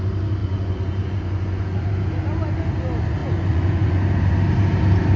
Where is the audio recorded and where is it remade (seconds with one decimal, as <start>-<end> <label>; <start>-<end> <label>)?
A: 0.0-0.4 recorded; 0.4-1.9 remade; 1.9-3.2 recorded; 3.2-4.0 remade; 4.0-5.2 recorded